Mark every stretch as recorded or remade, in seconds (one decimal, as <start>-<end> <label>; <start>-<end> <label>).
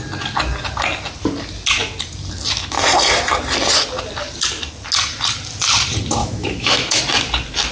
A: 0.0-6.2 recorded; 6.2-7.0 remade; 7.0-7.7 recorded